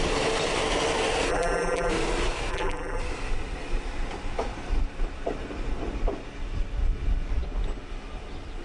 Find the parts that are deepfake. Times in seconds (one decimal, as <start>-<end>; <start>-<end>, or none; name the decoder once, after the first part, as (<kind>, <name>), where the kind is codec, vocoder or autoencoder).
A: 1.3-1.9 (vocoder, BigVGAN v2); 2.5-3.0